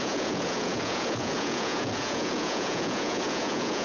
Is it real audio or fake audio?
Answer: fake